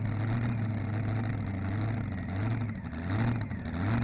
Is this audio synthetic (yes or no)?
no